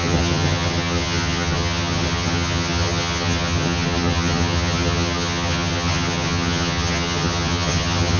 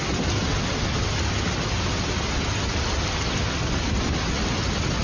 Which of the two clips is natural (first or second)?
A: second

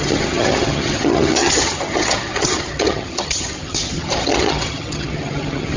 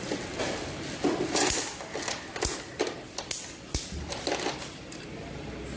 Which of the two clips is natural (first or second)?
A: second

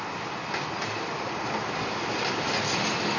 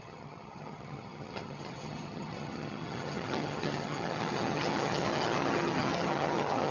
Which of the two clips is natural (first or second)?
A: first